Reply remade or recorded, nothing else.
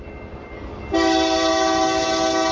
recorded